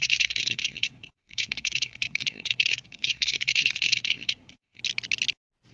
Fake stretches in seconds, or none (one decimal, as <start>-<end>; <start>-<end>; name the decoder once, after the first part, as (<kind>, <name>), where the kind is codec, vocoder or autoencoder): 0.0-4.8 (codec, SNAC)